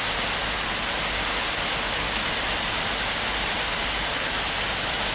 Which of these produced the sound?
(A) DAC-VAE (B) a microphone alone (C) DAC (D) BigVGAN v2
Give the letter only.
B